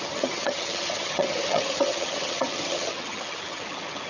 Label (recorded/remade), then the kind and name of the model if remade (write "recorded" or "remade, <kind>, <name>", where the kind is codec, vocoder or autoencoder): remade, vocoder, HiFi-GAN